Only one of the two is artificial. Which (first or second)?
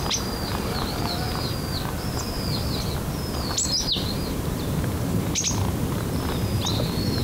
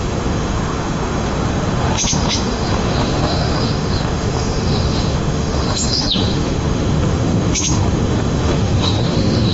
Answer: second